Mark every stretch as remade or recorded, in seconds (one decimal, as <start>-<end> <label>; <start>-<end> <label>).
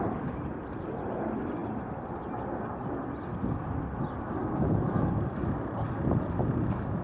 0.0-7.0 recorded